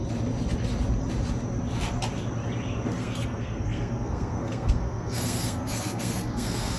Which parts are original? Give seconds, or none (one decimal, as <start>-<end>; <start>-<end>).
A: 0.0-3.0